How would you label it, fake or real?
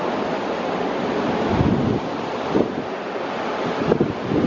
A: real